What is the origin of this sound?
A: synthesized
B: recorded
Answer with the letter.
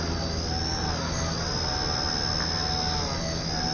B